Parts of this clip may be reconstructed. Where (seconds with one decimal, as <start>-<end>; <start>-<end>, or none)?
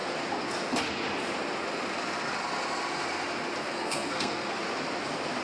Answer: 3.6-4.6